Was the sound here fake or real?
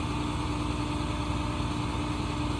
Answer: real